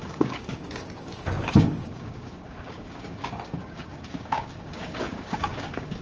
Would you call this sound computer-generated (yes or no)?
yes